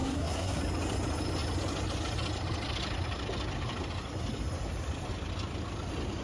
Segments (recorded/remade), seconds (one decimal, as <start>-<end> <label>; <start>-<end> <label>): 0.0-0.6 remade; 0.6-6.2 recorded